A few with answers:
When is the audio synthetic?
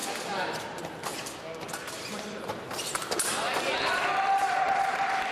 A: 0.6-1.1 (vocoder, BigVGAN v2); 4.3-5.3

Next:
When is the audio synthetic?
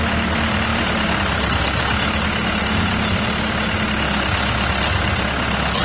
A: 0.7-1.2 (vocoder, BigVGAN v2)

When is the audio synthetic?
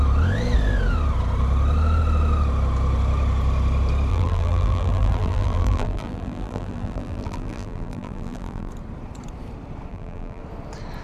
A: 4.1-8.7 (vocoder, BigVGAN v2); 9.9-10.4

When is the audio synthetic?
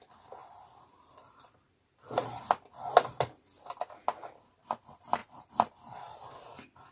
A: 0.4-2.4 (vocoder, BigVGAN v2); 5.2-6.3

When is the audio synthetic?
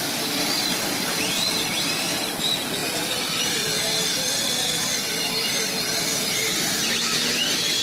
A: none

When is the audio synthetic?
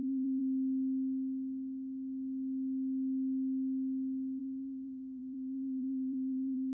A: 0.0-0.4 (vocoder, BigVGAN v2); 4.4-6.7